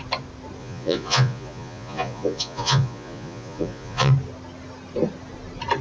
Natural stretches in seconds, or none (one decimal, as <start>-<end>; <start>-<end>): 0.0-0.6; 4.1-5.8